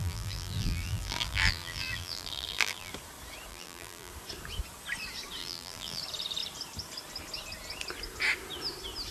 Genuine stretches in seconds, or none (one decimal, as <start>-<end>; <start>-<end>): 2.9-3.5; 4.1-5.4; 6.0-9.1